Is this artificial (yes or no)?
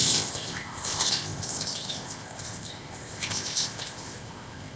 yes